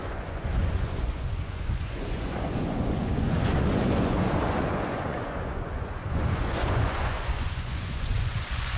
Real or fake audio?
fake